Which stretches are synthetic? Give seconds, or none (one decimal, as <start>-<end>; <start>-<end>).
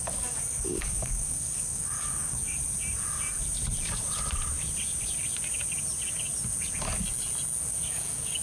0.0-2.6; 7.6-8.4